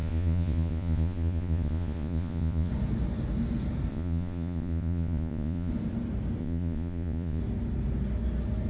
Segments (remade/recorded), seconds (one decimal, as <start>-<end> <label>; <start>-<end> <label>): 0.0-2.7 remade; 2.7-3.9 recorded; 3.9-5.7 remade; 5.7-6.4 recorded; 6.4-7.4 remade; 7.4-8.7 recorded